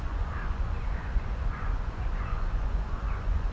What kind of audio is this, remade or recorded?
remade